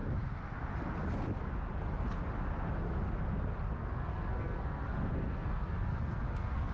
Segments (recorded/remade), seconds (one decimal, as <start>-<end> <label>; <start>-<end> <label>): 0.0-3.8 recorded; 3.8-6.7 remade